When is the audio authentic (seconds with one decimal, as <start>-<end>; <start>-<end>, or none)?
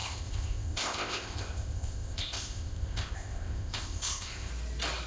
4.5-5.1